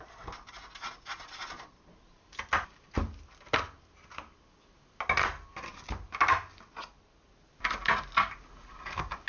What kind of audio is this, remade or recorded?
recorded